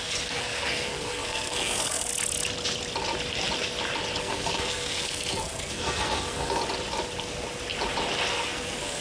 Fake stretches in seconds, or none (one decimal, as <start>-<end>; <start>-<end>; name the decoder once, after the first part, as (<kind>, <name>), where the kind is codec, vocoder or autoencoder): 0.0-2.1 (codec, SNAC); 4.2-6.6; 8.3-9.0